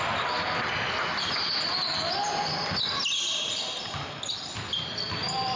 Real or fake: real